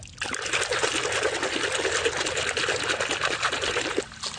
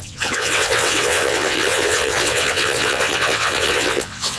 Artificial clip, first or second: second